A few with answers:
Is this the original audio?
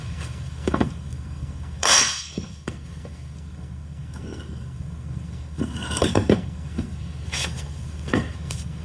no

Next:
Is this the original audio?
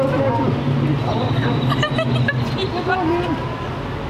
yes